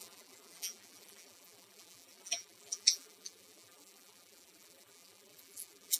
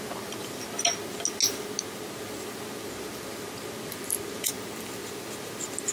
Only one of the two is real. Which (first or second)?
second